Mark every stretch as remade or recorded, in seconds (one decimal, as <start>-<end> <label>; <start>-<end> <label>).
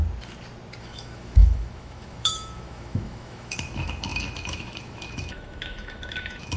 0.0-0.8 recorded; 0.8-6.6 remade